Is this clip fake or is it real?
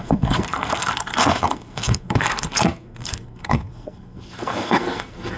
fake